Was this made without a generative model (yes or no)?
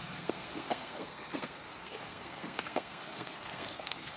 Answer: no